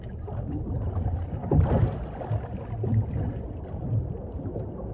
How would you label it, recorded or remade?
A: remade